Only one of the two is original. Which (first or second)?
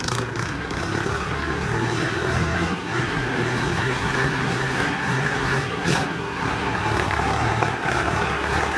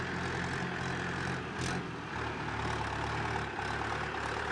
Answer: second